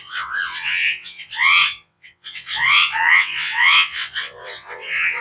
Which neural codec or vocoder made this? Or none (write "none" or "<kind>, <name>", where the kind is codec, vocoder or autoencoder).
vocoder, WaveNeXt